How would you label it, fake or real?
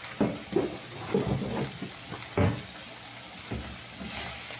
real